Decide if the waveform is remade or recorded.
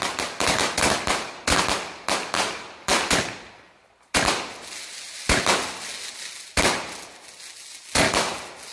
recorded